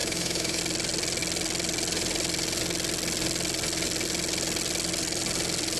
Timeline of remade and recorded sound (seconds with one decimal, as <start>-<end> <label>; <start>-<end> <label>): 0.0-0.6 remade; 0.6-5.8 recorded

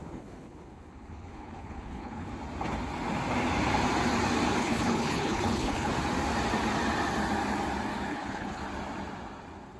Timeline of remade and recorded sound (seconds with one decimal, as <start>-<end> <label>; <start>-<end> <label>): 0.0-2.3 remade; 2.3-4.6 recorded; 4.6-5.9 remade; 5.9-8.1 recorded; 8.1-8.6 remade; 8.6-9.8 recorded

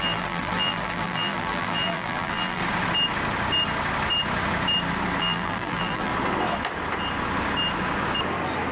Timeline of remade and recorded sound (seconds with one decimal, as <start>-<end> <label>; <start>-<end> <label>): 0.0-2.6 remade; 2.6-5.2 recorded; 5.2-6.1 remade; 6.1-8.7 recorded

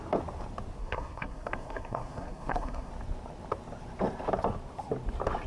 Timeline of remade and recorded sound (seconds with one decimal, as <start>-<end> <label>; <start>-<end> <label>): 0.0-0.8 recorded; 0.8-2.9 remade; 2.9-5.5 recorded